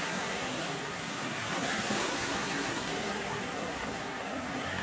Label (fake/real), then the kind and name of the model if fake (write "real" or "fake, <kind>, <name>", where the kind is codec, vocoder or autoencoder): fake, codec, SNAC